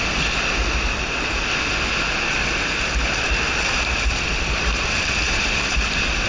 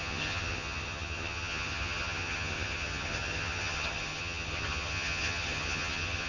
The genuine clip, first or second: first